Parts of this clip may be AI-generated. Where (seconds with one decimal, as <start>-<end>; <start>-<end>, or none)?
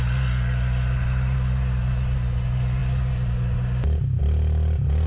none